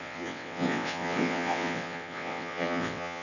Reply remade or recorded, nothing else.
remade